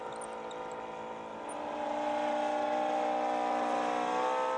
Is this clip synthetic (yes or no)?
no